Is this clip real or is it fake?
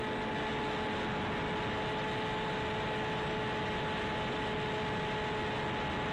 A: real